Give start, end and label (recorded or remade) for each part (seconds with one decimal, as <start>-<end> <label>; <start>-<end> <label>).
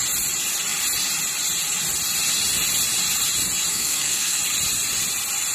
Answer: 0.0-3.7 recorded; 3.7-4.4 remade; 4.4-5.5 recorded